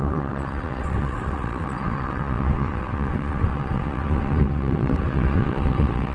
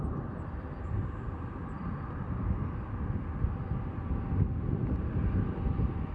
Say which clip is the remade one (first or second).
first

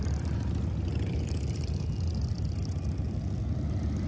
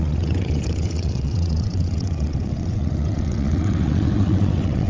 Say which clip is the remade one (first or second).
second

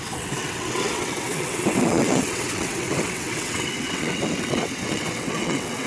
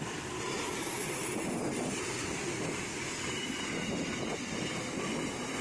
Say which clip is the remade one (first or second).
first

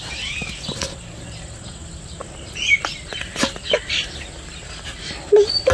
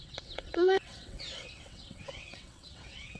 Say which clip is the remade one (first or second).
second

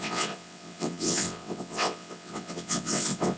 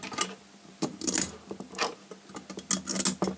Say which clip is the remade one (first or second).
first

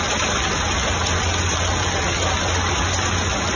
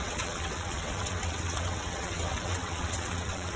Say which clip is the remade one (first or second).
second